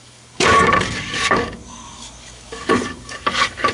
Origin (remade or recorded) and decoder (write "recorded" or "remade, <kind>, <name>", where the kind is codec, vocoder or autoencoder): remade, codec, DAC